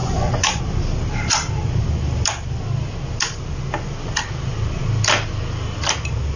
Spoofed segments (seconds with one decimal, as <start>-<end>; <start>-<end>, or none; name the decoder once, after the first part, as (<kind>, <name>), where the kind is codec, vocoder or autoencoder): 0.0-0.6 (vocoder, Vocos)